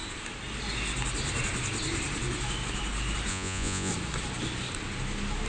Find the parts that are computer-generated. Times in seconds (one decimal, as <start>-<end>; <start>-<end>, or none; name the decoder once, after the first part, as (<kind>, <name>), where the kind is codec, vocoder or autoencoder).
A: 3.3-3.9 (vocoder, Vocos)